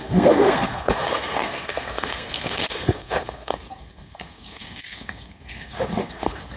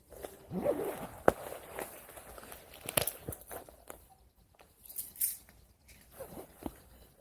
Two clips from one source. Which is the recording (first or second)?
second